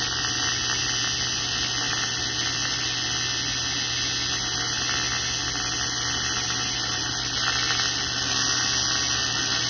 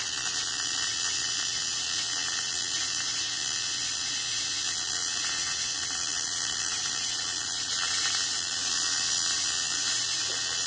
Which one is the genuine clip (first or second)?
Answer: first